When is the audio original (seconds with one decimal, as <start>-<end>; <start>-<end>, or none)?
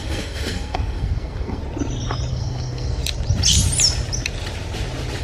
1.6-2.3; 3.0-5.2